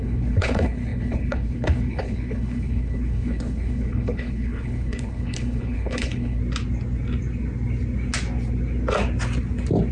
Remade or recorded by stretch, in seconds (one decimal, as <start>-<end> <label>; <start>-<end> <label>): 0.0-6.4 remade; 6.4-9.9 recorded